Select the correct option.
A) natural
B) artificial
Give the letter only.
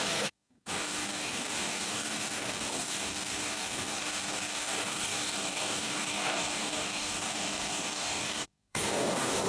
B